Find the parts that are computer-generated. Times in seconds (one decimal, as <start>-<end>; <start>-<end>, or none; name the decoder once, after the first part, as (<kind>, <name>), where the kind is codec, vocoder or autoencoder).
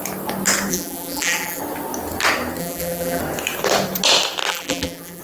0.7-1.6 (vocoder, BigVGAN v2); 2.6-3.2; 4.5-5.2